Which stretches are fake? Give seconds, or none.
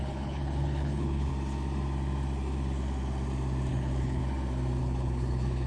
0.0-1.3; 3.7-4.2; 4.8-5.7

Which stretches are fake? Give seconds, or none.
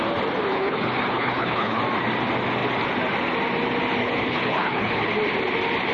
0.5-1.8; 4.0-5.1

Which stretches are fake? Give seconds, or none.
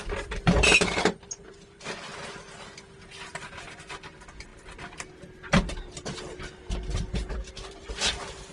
none